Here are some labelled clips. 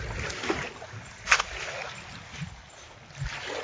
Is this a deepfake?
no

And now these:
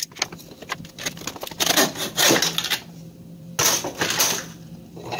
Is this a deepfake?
no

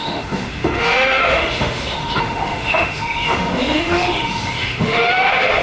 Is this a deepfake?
yes